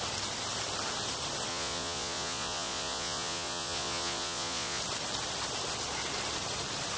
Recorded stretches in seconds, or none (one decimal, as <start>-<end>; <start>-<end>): 0.0-1.5; 4.8-7.0